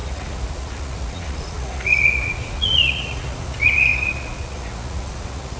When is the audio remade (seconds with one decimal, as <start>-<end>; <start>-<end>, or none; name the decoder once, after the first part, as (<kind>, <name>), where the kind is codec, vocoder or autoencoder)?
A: 0.0-5.6 (vocoder, Vocos)